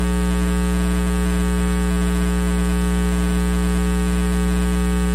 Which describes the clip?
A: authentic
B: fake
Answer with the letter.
A